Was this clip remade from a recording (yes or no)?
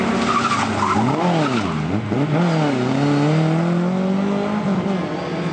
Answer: no